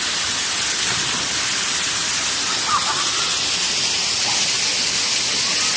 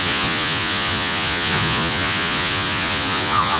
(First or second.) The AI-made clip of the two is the second